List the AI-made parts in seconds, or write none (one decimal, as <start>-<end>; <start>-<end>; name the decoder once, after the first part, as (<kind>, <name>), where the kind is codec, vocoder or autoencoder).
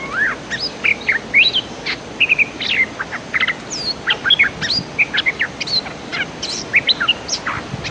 none